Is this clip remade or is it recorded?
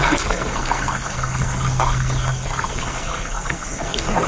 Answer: remade